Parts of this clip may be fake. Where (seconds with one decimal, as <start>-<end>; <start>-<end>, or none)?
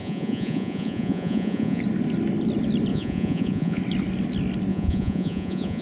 0.0-1.8; 2.9-3.8; 4.7-5.8